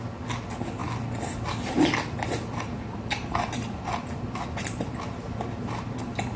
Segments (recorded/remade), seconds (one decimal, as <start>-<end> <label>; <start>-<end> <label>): 0.0-6.4 recorded